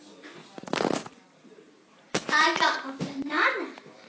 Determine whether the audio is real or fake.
real